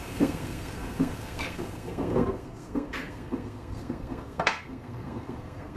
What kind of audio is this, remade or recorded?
remade